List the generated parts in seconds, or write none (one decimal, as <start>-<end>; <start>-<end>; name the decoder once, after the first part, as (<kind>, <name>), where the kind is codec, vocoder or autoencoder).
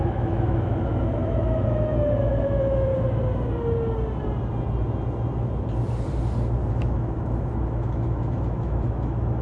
0.0-2.9 (autoencoder, DAC-VAE); 6.7-9.4